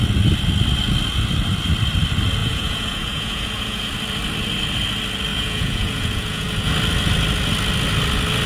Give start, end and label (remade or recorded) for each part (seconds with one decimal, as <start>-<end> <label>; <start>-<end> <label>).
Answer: 0.0-2.4 recorded; 2.4-3.9 remade; 3.9-5.3 recorded; 5.3-6.7 remade; 6.7-8.5 recorded